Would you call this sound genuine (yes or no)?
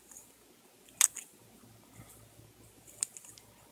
yes